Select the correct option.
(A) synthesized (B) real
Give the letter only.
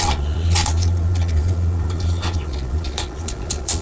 A